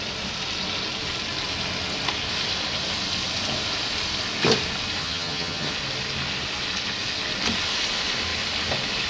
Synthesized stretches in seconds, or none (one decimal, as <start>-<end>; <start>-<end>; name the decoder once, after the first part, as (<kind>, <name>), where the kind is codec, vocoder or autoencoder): 5.0-5.7 (vocoder, HiFi-GAN)